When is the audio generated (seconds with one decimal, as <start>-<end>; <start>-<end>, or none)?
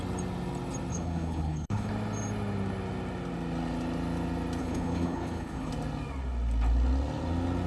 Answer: 0.9-1.9; 4.6-5.7